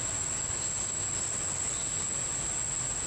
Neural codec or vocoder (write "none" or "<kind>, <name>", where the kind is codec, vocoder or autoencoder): none